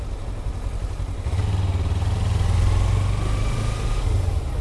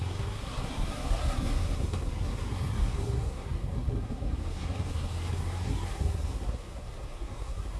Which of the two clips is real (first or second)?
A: first